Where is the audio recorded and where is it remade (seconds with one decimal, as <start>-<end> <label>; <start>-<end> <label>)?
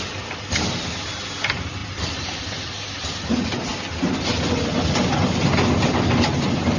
0.0-1.8 recorded; 1.8-2.4 remade; 2.4-6.8 recorded